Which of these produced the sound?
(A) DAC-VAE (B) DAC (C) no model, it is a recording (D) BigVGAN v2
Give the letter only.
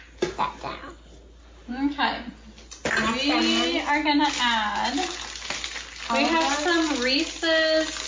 C